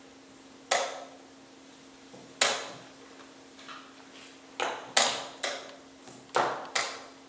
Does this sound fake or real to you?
real